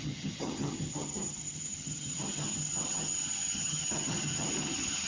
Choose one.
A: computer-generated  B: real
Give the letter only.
A